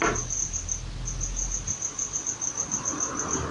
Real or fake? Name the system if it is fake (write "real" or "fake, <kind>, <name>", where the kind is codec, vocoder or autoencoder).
real